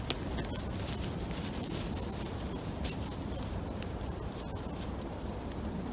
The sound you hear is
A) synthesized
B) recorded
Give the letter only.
B